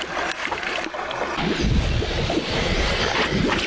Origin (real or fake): real